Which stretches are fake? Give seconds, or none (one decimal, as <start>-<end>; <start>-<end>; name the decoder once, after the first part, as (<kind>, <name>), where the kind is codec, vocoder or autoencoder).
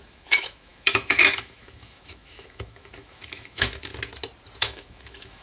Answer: 0.0-3.9 (autoencoder, DAC-VAE); 4.6-5.4